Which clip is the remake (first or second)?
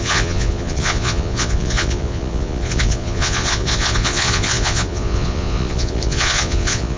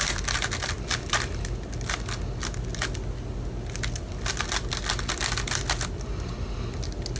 first